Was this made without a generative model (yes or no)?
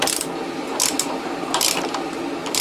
yes